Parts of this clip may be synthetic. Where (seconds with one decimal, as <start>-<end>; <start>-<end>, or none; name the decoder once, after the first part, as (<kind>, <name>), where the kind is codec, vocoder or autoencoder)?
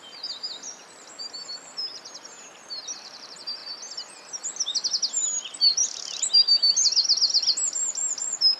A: none